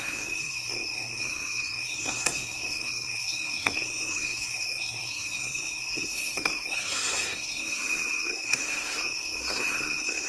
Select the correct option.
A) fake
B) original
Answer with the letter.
A